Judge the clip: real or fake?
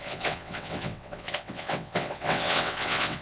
fake